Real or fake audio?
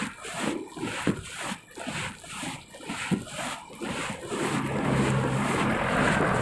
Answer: real